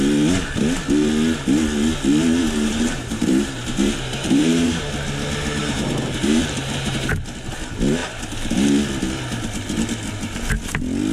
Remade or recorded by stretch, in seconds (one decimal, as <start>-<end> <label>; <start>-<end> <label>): 0.0-2.4 recorded; 2.4-4.8 remade; 4.8-5.6 recorded; 5.6-7.1 remade; 7.1-11.1 recorded